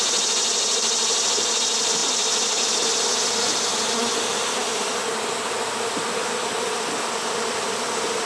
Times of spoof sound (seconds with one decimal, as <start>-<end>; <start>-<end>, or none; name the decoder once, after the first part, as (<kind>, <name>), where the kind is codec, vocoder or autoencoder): 0.0-2.0 (vocoder, BigVGAN v2); 3.1-8.3